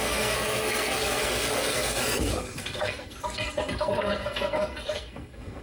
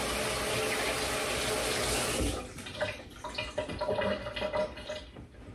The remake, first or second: first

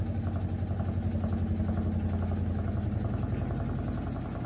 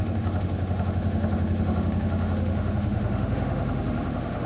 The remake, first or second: second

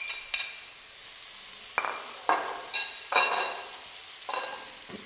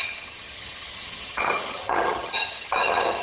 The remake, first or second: second